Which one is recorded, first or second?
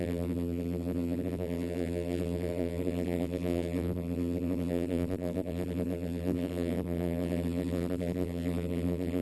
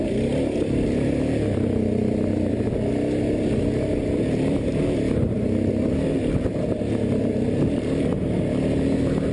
second